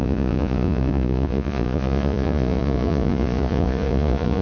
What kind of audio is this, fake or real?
fake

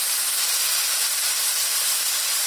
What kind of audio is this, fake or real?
real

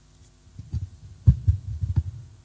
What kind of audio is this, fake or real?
real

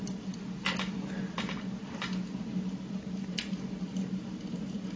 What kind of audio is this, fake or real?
real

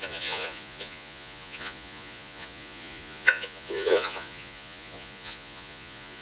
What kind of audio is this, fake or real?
fake